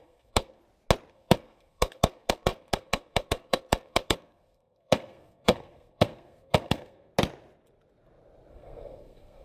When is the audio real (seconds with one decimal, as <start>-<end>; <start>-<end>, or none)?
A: 0.6-1.1; 7.1-8.5